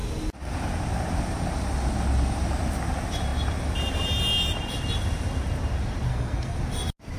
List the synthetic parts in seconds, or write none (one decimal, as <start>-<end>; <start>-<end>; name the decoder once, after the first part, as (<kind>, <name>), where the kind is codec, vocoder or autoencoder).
6.1-6.6 (codec, SNAC)